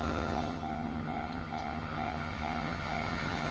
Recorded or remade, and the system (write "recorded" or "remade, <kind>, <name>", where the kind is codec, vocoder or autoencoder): remade, vocoder, HiFi-GAN